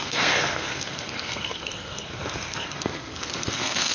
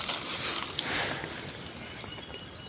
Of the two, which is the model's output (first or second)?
first